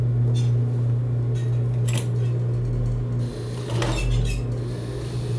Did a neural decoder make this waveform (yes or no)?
no